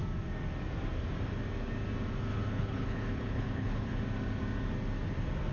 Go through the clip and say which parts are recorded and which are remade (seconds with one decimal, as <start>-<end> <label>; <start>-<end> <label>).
0.0-2.3 recorded; 2.3-4.0 remade; 4.0-5.5 recorded